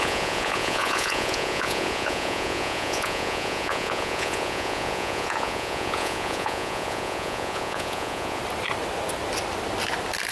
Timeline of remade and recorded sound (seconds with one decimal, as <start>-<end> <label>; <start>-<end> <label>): 0.0-8.4 remade; 8.4-10.3 recorded